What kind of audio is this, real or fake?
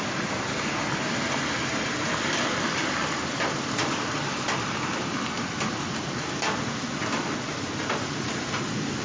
real